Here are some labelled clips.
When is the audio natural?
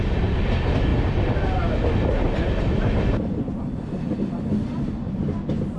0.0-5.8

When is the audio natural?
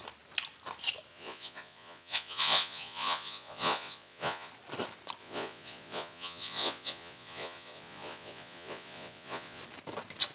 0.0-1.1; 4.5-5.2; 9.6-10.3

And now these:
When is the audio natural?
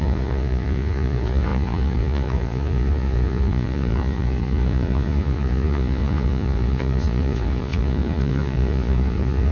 none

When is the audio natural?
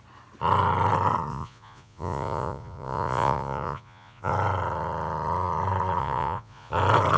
0.0-1.3; 4.3-6.0; 6.7-7.2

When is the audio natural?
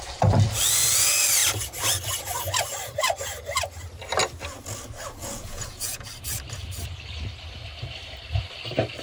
0.0-5.2; 6.1-9.0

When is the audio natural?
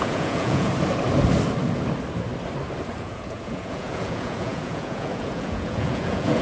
0.7-2.9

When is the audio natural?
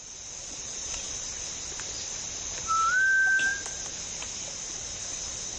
0.0-0.4; 1.1-5.6